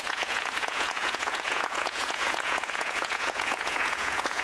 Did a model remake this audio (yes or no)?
yes